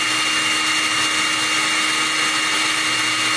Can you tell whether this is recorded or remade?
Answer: recorded